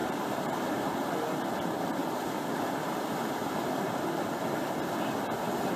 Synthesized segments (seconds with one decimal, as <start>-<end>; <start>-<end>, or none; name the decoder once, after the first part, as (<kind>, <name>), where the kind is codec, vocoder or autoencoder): 0.0-1.1 (vocoder, BigVGAN v2)